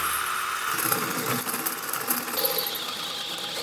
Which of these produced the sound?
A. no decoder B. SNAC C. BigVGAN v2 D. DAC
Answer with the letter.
A